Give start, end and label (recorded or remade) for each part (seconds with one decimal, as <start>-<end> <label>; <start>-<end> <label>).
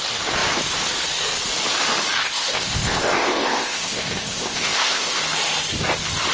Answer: 0.0-2.2 recorded; 2.2-5.2 remade; 5.2-6.3 recorded